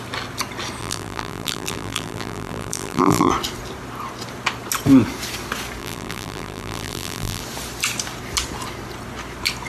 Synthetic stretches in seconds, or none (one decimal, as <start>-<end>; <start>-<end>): 0.8-3.3; 5.8-7.4